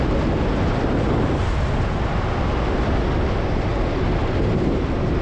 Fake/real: real